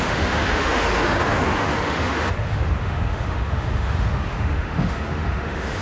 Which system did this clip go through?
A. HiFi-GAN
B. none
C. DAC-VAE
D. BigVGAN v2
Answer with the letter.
C